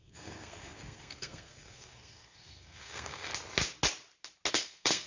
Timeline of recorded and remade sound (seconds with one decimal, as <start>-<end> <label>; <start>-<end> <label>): 0.0-3.3 remade; 3.3-4.5 recorded; 4.5-5.1 remade